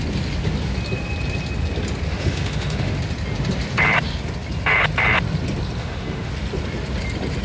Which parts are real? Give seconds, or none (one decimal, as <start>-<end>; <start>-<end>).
0.0-2.1; 3.0-5.8; 6.3-7.4